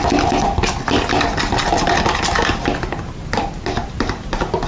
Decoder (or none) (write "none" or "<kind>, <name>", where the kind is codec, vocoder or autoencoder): none